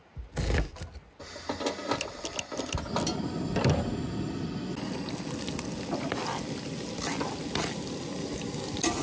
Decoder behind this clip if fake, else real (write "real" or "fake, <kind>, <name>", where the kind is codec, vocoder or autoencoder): real